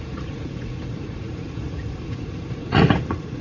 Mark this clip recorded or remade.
remade